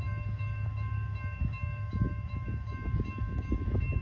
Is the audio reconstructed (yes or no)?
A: yes